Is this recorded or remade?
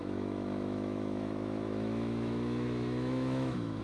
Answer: remade